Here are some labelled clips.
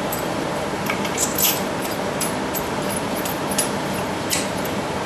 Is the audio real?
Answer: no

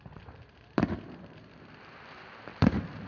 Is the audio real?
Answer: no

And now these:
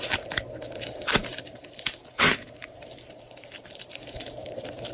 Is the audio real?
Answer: no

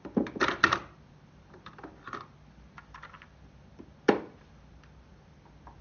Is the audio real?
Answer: no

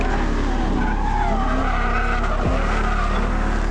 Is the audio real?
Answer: yes